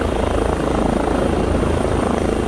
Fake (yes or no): yes